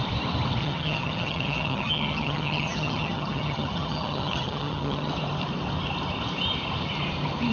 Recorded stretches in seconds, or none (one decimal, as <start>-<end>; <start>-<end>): 0.0-0.6; 5.1-7.5